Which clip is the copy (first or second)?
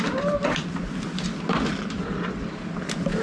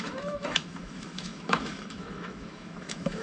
second